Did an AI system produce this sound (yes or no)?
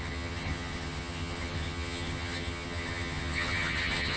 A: yes